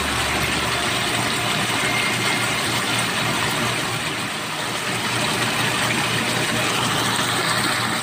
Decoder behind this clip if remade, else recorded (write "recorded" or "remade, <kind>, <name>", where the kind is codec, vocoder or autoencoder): remade, vocoder, BigVGAN v2